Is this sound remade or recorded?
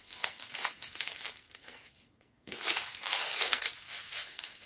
remade